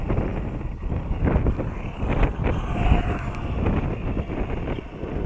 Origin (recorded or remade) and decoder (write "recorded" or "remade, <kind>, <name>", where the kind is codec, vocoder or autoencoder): recorded